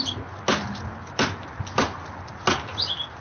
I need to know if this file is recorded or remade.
recorded